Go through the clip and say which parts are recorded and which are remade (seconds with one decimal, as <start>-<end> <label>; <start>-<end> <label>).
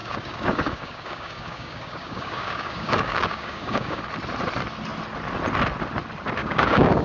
0.0-4.0 remade; 4.0-6.4 recorded; 6.4-7.0 remade